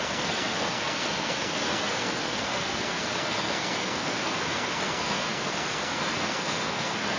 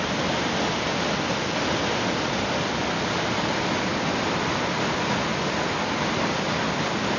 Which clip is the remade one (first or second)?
first